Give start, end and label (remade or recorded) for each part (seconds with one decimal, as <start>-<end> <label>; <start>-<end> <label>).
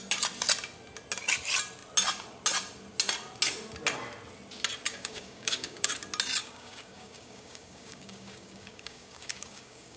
0.0-4.9 recorded; 4.9-5.9 remade; 5.9-6.4 recorded; 6.4-10.0 remade